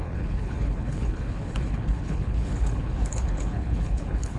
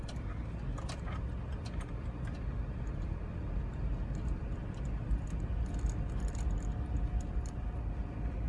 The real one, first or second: second